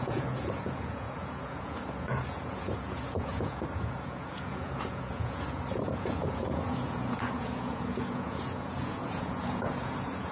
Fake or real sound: fake